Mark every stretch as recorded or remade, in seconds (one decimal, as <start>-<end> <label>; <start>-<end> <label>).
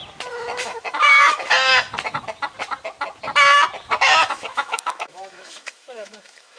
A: 0.0-0.6 recorded; 0.6-1.7 remade; 1.7-4.3 recorded; 4.3-6.6 remade